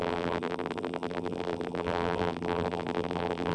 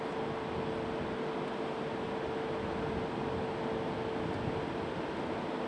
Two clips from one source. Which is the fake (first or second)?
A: first